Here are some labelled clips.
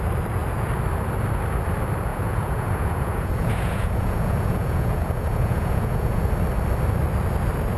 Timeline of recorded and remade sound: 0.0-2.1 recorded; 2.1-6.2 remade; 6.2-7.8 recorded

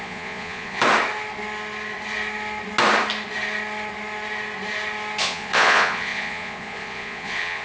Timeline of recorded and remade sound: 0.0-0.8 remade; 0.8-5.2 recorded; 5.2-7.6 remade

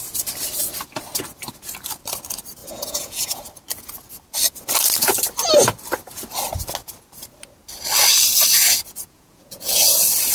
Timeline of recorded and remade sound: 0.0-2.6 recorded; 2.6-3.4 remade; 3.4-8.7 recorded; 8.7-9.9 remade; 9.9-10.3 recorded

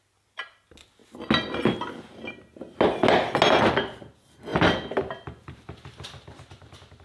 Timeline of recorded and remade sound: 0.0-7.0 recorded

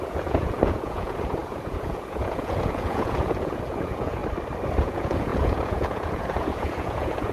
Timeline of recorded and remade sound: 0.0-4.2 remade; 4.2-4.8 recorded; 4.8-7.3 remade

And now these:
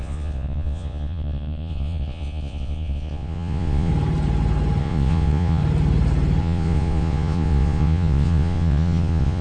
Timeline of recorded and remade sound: 0.0-3.9 remade; 3.9-4.8 recorded; 4.8-5.6 remade; 5.6-6.4 recorded; 6.4-9.4 remade

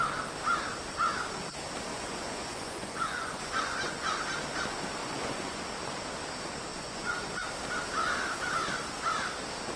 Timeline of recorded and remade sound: 0.0-1.9 recorded; 1.9-4.2 remade; 4.2-5.0 recorded; 5.0-5.6 remade; 5.6-6.7 recorded; 6.7-7.3 remade; 7.3-9.8 recorded

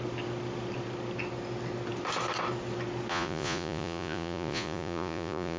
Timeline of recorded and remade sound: 0.0-3.1 recorded; 3.1-5.6 remade